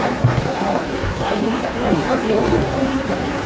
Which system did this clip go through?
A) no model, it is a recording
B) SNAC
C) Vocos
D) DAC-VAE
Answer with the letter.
B